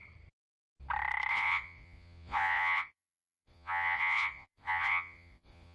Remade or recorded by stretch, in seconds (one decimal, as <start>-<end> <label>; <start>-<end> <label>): 0.0-1.3 recorded; 1.3-5.7 remade